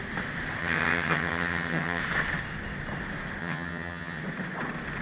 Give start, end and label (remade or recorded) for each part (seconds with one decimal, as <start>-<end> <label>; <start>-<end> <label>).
0.0-0.6 recorded; 0.6-2.0 remade; 2.0-3.4 recorded; 3.4-4.2 remade; 4.2-5.0 recorded